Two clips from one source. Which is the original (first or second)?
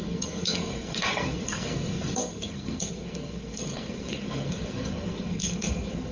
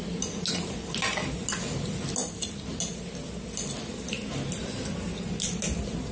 second